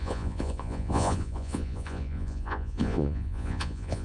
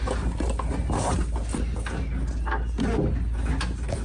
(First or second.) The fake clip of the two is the first